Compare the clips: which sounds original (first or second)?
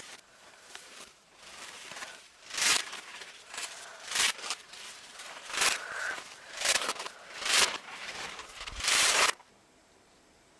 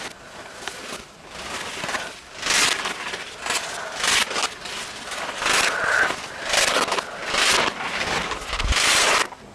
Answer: second